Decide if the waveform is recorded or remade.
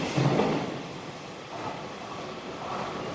recorded